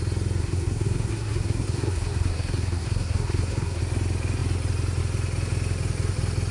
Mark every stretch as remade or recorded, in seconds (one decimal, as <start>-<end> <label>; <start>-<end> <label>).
0.0-0.4 recorded; 0.4-3.8 remade; 3.8-6.5 recorded